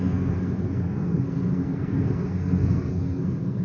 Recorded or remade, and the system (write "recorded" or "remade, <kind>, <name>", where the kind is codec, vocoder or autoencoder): remade, codec, SNAC